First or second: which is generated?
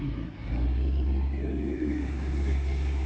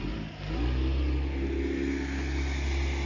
first